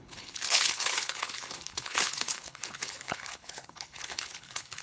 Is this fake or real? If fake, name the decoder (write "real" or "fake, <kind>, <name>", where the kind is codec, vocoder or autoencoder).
fake, codec, HILCodec